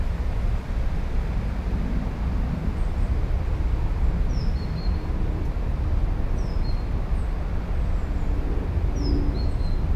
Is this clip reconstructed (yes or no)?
no